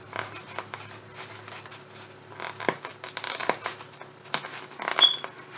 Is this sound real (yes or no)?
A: yes